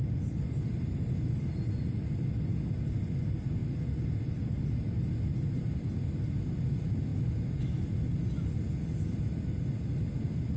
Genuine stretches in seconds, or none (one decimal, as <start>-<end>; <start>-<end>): 0.0-7.1; 7.8-10.6